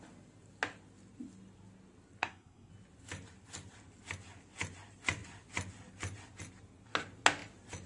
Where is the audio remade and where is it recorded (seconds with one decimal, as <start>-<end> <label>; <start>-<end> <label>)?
0.0-2.2 recorded; 2.2-2.7 remade; 2.7-7.9 recorded